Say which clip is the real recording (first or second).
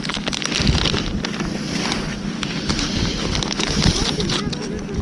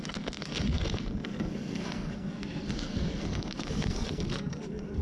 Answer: first